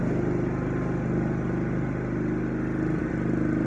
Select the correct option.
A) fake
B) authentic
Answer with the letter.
B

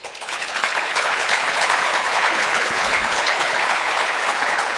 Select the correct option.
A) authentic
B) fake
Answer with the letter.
B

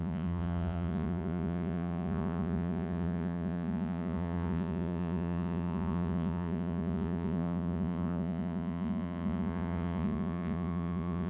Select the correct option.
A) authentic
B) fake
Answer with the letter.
B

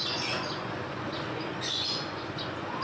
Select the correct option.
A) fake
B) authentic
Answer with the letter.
A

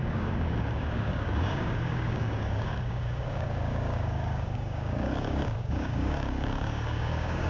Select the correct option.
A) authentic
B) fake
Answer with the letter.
B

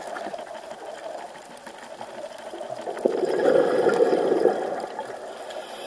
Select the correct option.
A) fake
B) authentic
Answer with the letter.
B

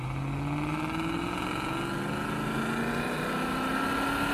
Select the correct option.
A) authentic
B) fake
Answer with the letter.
A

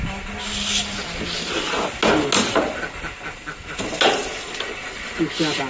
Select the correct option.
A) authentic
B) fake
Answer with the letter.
A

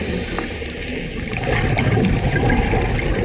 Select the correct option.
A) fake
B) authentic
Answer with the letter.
B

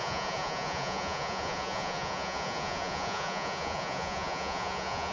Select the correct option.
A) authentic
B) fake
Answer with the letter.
B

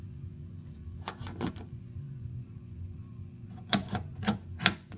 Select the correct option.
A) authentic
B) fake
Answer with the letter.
B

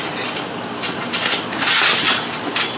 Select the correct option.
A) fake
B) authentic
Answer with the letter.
B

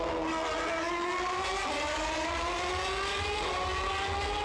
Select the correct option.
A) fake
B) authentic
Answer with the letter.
B